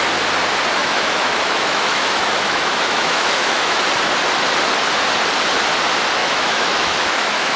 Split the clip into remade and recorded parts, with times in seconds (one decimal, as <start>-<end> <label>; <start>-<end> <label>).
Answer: 0.0-0.8 recorded; 0.8-3.8 remade; 3.8-6.2 recorded; 6.2-7.6 remade